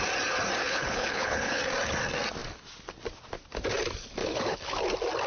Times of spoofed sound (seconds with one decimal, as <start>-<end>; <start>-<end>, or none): 0.6-1.6; 4.2-4.8